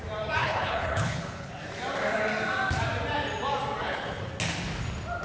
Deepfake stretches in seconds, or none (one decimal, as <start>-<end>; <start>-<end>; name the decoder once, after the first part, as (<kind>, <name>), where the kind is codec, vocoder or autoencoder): 0.4-1.5 (codec, HILCodec); 3.8-4.3